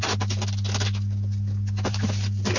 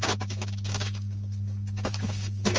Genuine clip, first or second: first